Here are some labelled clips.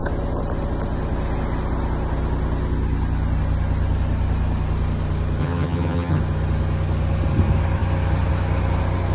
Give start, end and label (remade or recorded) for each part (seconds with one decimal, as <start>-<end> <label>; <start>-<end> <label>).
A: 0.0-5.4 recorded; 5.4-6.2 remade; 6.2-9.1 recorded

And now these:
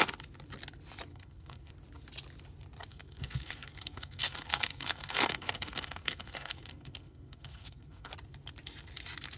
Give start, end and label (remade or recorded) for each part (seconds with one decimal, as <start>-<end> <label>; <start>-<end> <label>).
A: 0.0-1.1 recorded; 1.1-1.7 remade; 1.7-2.9 recorded; 2.9-8.1 remade; 8.1-9.4 recorded

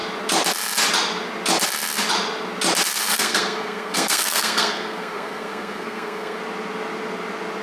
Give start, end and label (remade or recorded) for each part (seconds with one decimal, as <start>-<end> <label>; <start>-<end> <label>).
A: 0.0-3.1 recorded; 3.1-6.4 remade; 6.4-7.6 recorded